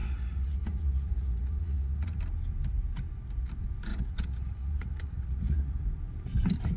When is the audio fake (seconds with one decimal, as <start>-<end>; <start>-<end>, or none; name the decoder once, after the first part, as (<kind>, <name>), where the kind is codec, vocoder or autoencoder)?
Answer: 0.0-2.2 (vocoder, Vocos); 3.9-5.8